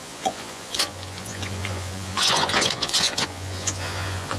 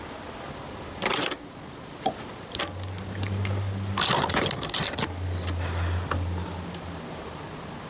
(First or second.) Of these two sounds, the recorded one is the second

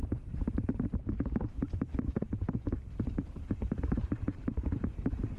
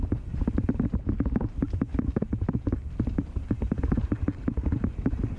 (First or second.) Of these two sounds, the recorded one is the second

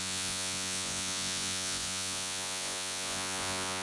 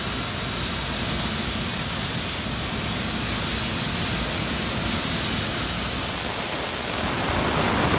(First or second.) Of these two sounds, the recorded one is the second